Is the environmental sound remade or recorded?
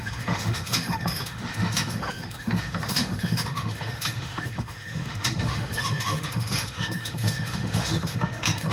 remade